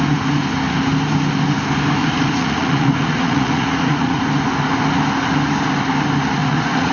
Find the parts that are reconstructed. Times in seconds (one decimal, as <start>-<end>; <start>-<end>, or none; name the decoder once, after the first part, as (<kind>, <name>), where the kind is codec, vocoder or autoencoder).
2.0-4.2 (vocoder, Vocos); 6.4-6.9